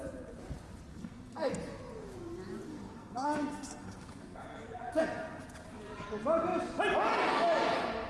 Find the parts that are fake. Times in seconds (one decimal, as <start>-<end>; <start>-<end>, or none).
0.9-1.5; 2.7-5.0